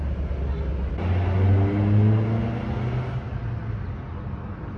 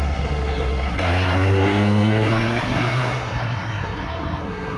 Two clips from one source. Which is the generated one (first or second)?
second